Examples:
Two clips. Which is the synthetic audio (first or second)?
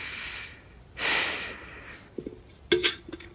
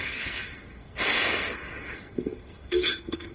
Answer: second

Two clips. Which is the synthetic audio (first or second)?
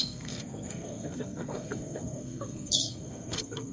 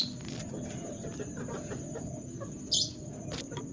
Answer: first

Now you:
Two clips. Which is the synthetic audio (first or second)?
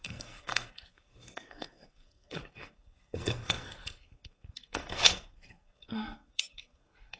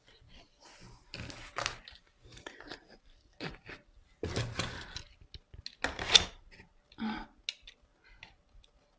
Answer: first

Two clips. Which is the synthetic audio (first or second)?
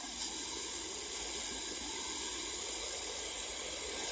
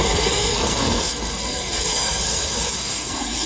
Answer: second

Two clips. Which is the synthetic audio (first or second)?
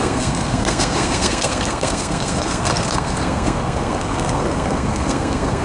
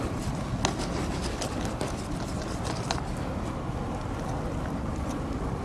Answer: first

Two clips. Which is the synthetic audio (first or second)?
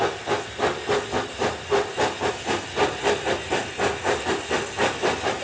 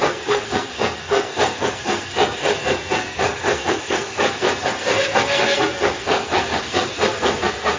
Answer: second